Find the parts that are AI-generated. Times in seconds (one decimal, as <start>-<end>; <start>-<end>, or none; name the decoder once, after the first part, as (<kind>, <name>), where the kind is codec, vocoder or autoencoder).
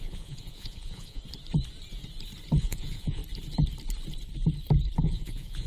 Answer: 0.0-1.2 (vocoder, Vocos); 2.6-3.2; 5.0-5.7